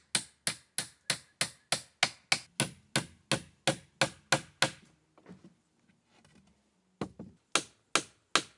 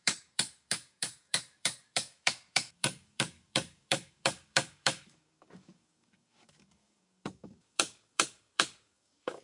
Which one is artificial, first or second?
second